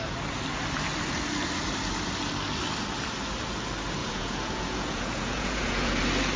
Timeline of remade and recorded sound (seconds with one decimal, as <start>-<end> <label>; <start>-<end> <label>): 0.0-4.0 recorded; 4.0-6.0 remade; 6.0-6.4 recorded

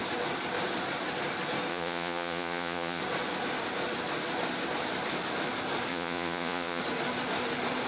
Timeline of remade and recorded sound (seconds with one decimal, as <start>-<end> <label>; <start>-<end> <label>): 0.0-1.7 recorded; 1.7-3.0 remade; 3.0-5.9 recorded; 5.9-6.8 remade; 6.8-7.9 recorded

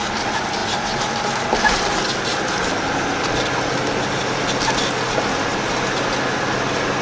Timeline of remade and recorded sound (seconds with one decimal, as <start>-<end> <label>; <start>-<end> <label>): 0.0-7.0 recorded